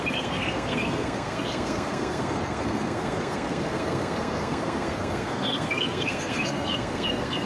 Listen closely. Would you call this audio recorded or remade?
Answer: remade